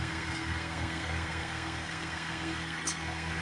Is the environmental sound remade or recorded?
remade